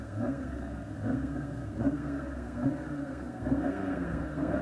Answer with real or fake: fake